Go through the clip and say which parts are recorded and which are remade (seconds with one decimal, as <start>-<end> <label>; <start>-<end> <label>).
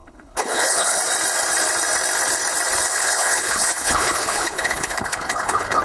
0.0-1.0 remade; 1.0-2.9 recorded; 2.9-5.8 remade